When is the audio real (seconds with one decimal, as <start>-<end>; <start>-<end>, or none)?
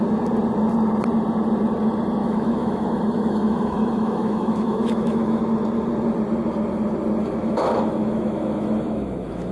0.0-2.2; 5.4-7.2